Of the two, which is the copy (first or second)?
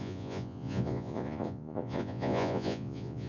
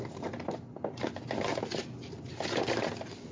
first